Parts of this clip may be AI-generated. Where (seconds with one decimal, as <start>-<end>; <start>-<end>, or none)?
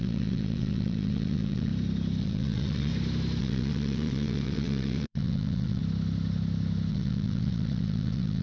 0.0-1.7; 2.2-2.9; 3.4-5.8; 6.9-8.4